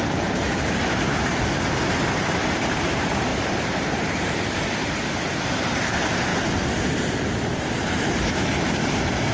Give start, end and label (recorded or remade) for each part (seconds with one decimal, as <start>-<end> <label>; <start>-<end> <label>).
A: 0.0-3.3 remade; 3.3-4.2 recorded; 4.2-6.3 remade; 6.3-7.2 recorded; 7.2-9.3 remade